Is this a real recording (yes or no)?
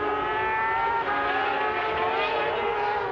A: yes